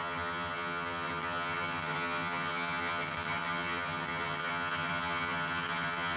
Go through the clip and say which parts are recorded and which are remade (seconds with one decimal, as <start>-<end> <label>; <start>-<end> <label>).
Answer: 0.0-6.2 remade